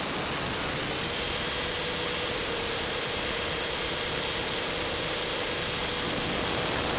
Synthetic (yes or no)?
no